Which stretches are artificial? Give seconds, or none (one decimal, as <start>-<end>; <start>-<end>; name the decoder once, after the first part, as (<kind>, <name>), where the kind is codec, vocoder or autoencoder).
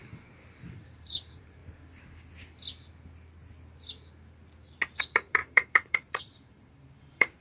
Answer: 0.0-1.6 (vocoder, BigVGAN v2); 5.0-7.4